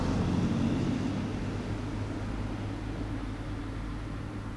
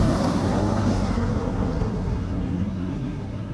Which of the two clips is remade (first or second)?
second